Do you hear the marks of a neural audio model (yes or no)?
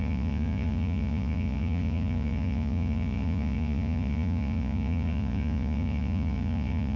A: yes